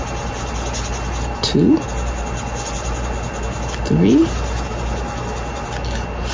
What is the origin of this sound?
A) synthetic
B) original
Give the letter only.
B